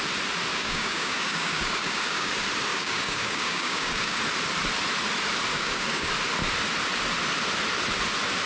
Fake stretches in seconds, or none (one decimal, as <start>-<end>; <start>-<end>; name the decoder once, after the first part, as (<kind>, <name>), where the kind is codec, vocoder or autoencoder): 0.5-2.3 (codec, DAC); 2.7-4.2; 5.5-6.1